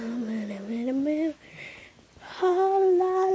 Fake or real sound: real